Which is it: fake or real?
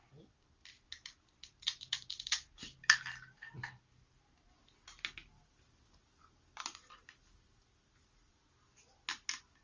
real